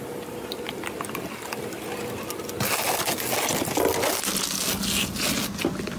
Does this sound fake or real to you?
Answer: real